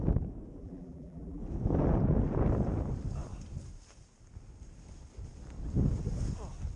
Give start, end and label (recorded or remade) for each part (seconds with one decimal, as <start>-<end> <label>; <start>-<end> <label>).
0.0-0.6 recorded; 0.6-1.4 remade; 1.4-6.8 recorded